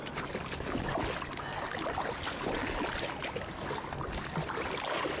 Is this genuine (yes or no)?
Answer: yes